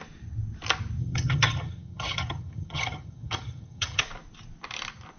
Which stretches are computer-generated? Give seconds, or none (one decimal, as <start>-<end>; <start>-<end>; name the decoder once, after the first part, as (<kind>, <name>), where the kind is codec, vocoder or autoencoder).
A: 1.0-4.0 (vocoder, HiFi-GAN)